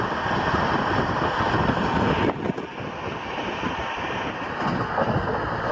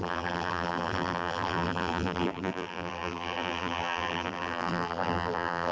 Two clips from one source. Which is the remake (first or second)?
second